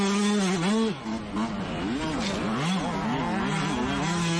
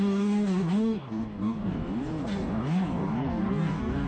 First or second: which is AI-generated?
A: second